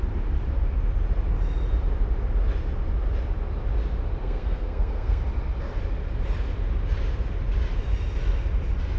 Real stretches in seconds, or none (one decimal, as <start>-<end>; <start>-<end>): 0.0-4.2; 5.2-9.0

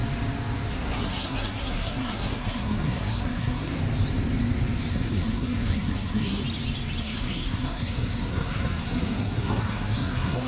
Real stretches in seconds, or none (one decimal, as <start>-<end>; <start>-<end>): 0.0-0.7; 3.8-4.9; 6.4-7.0

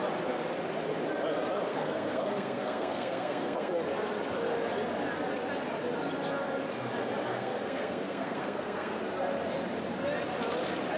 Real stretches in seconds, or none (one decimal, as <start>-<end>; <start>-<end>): 0.0-1.7; 3.7-7.3; 9.0-11.0

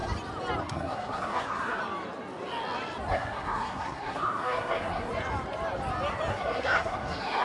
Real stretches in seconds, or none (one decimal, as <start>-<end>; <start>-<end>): 0.0-0.6; 1.8-3.1; 5.1-6.3

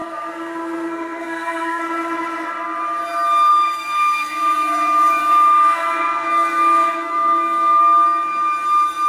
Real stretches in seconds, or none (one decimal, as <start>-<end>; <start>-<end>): 1.8-3.5; 7.8-9.1